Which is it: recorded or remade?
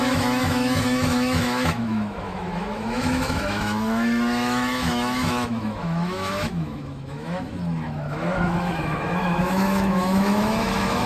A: remade